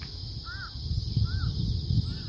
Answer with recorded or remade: recorded